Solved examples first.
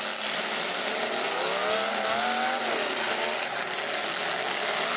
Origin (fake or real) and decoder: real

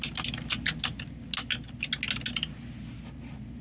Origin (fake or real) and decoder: real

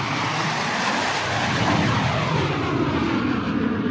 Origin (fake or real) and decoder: real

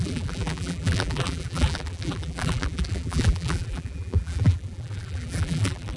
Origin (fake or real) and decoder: fake, vocoder, BigVGAN v2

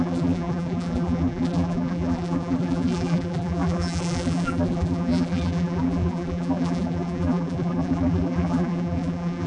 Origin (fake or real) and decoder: fake, vocoder, BigVGAN v2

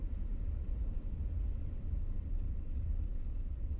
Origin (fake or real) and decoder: fake, vocoder, BigVGAN v2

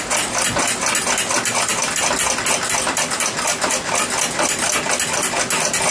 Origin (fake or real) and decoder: real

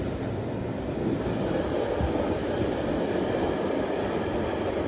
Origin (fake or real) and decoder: real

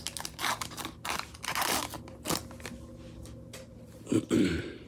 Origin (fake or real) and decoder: real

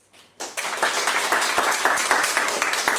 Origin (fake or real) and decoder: real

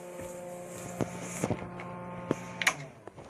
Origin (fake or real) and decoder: real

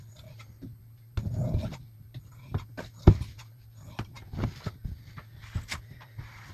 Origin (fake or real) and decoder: real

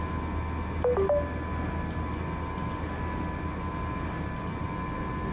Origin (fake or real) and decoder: real